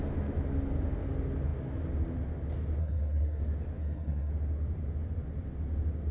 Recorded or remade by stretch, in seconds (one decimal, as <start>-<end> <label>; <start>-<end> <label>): 0.0-2.8 recorded; 2.8-3.4 remade; 3.4-3.8 recorded; 3.8-4.3 remade; 4.3-6.1 recorded